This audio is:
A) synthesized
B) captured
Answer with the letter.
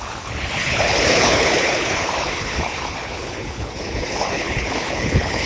A